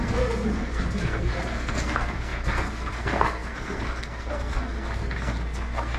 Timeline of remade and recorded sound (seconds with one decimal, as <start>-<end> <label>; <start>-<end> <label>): 0.0-6.0 remade